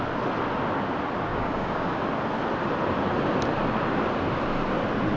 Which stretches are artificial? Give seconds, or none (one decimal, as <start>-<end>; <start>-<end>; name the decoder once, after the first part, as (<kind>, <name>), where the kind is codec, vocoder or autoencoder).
1.3-2.0 (codec, DAC)